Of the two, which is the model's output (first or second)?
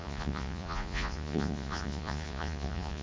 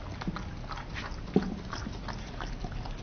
first